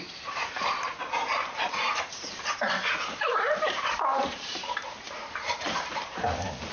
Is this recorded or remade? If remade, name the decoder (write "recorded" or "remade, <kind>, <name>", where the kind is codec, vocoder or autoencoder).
remade, vocoder, BigVGAN v2